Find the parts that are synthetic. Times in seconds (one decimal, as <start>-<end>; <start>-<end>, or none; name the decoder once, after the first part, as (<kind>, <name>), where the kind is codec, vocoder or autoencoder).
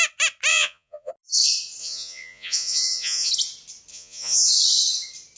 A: 0.5-1.1 (vocoder, Vocos); 1.8-3.3; 3.9-4.5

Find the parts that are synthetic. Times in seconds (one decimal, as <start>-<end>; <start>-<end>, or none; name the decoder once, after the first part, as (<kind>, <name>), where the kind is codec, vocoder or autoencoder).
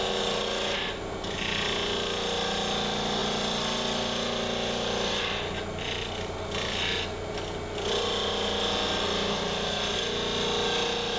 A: none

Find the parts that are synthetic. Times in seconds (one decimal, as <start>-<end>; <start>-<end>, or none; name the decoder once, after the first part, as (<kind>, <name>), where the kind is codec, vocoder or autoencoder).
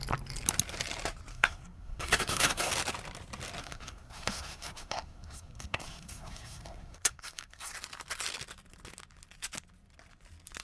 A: 1.3-2.7 (codec, SNAC); 3.6-7.7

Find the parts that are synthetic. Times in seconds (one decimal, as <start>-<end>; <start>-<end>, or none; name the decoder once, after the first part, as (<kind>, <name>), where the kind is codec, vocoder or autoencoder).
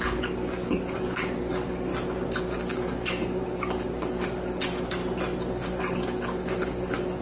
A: 0.0-1.9 (codec, DAC); 2.4-5.0; 5.5-7.2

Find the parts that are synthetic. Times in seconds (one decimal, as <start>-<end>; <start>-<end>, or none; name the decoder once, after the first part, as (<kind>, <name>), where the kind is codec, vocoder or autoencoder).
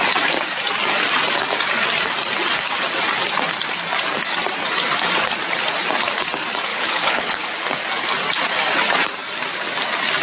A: 6.7-7.7 (codec, HILCodec)